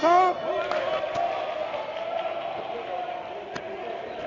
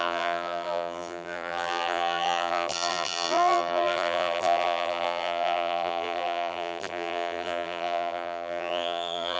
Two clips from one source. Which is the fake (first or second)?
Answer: second